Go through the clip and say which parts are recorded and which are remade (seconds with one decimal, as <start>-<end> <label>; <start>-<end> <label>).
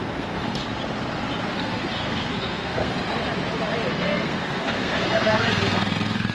0.0-0.6 remade; 0.6-1.4 recorded; 1.4-2.9 remade; 2.9-3.9 recorded; 3.9-6.3 remade